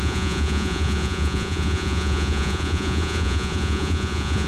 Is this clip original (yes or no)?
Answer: no